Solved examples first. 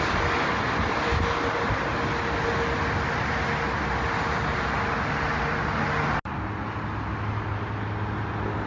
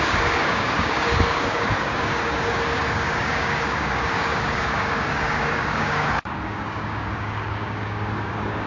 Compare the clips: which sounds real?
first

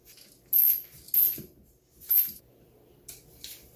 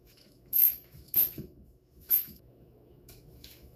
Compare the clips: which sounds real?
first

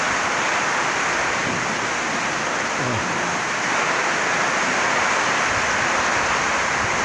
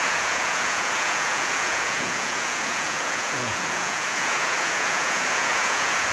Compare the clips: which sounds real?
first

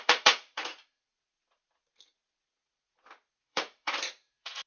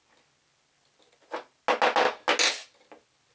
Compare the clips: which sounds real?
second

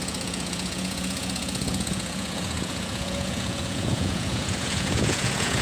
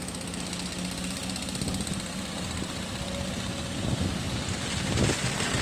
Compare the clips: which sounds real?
second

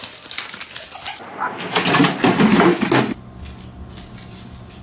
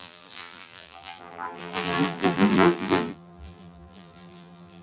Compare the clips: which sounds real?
first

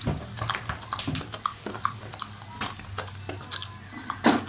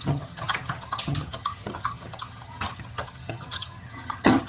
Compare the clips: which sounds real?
first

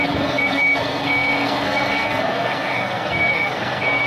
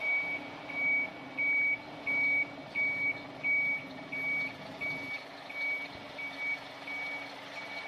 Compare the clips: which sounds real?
second